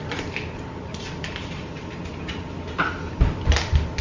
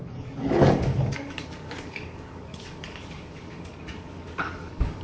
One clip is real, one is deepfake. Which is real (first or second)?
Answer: first